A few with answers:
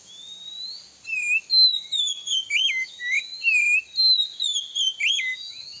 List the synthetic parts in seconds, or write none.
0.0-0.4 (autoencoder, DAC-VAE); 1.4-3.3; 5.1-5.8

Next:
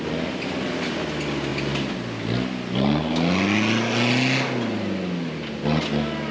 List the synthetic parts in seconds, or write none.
none

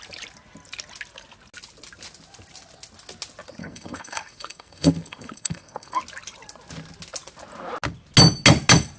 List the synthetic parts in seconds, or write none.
3.6-6.0 (codec, SNAC)

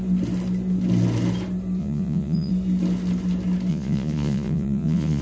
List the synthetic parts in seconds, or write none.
1.8-2.5 (vocoder, Vocos); 3.7-5.2